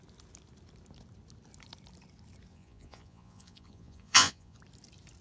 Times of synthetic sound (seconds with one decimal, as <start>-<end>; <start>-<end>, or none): 2.5-4.6